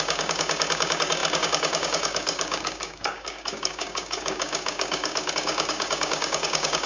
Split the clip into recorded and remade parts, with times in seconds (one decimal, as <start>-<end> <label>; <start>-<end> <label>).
0.0-6.9 remade